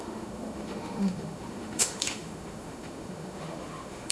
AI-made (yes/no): yes